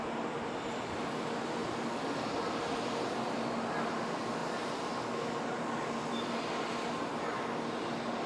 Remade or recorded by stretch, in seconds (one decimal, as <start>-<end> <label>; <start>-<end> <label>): 0.0-8.3 recorded